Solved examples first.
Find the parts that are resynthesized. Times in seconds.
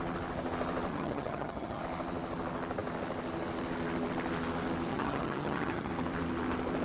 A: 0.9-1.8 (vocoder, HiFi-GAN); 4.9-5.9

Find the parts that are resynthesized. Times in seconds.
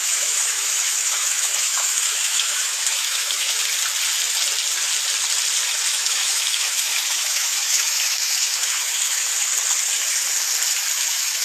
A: 0.0-3.6 (autoencoder, DAC-VAE); 5.9-9.3; 10.9-11.4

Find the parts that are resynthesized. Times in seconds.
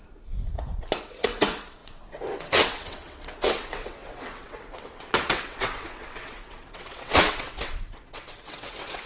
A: 1.0-9.1 (vocoder, WaveNeXt)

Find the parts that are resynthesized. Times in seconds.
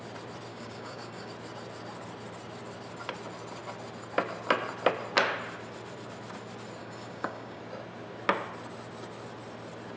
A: 0.5-1.3 (codec, DAC); 6.8-7.6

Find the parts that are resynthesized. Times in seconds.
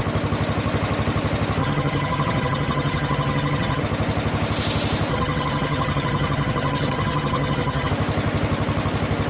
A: 1.6-3.8 (vocoder, HiFi-GAN); 5.1-7.9